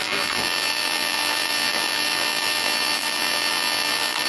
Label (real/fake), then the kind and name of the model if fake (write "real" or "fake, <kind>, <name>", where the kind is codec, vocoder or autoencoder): fake, vocoder, BigVGAN v2